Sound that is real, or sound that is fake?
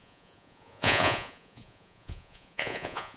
fake